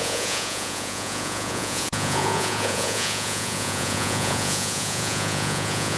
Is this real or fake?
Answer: fake